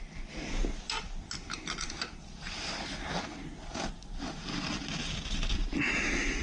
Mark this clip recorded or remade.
recorded